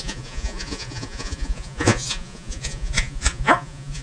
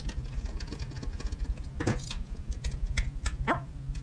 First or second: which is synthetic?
first